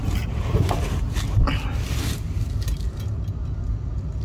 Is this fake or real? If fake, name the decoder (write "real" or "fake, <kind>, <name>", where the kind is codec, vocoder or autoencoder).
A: real